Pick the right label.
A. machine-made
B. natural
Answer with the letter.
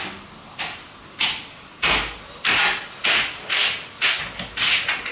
B